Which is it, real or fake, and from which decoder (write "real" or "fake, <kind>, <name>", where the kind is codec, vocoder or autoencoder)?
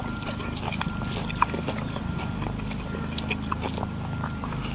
real